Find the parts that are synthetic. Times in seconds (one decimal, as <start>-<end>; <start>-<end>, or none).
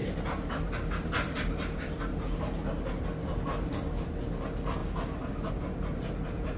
none